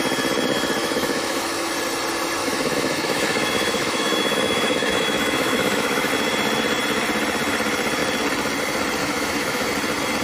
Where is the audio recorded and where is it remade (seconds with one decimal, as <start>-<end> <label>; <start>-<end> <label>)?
0.0-0.8 recorded; 0.8-1.7 remade; 1.7-2.4 recorded; 2.4-6.1 remade; 6.1-9.0 recorded; 9.0-9.7 remade; 9.7-10.2 recorded